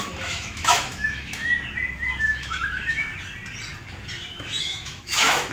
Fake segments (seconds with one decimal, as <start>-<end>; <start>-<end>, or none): 0.0-1.5; 2.2-3.1; 4.3-5.5

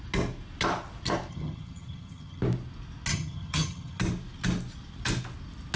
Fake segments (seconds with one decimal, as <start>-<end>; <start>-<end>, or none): 1.3-2.4; 3.1-4.0

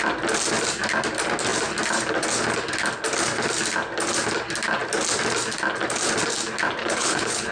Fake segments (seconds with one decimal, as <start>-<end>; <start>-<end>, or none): 6.8-7.5

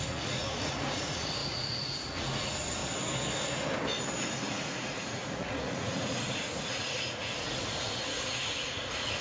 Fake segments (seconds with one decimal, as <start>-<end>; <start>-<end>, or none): 0.0-2.8; 4.5-9.2